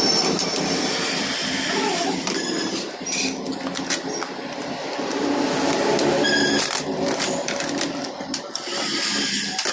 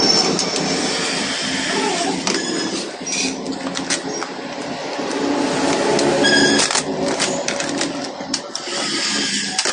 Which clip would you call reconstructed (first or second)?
first